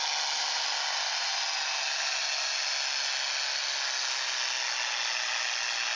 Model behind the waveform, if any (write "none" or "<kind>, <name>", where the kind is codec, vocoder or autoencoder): none